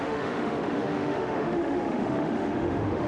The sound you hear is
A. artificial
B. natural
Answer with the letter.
A